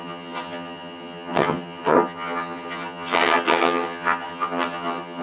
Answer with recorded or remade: remade